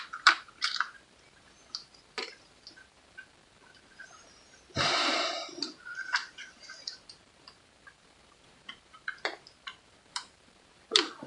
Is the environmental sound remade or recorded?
remade